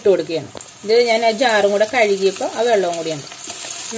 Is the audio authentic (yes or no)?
yes